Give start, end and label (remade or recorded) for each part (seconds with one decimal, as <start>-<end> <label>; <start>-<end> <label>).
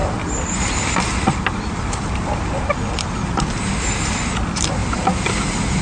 0.0-4.8 recorded; 4.8-5.3 remade; 5.3-5.8 recorded